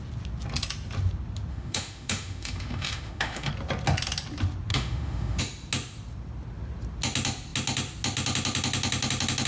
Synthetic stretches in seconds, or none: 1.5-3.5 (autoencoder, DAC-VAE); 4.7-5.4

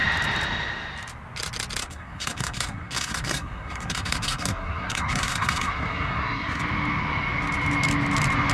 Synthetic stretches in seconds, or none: 1.8-6.6 (codec, SNAC)